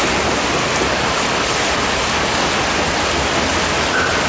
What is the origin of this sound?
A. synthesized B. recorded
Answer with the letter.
B